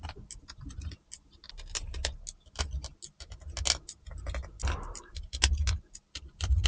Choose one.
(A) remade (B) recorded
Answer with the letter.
B